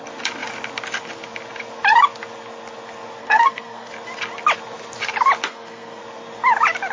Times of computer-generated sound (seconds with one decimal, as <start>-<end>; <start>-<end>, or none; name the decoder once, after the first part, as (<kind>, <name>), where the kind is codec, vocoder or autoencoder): 3.2-3.9 (codec, SNAC); 5.5-6.0